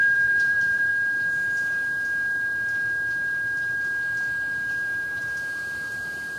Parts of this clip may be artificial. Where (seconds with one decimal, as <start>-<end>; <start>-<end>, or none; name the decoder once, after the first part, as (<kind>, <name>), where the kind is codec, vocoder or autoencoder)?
0.0-0.9 (vocoder, BigVGAN v2); 4.7-5.2